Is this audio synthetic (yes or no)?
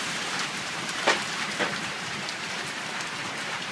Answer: yes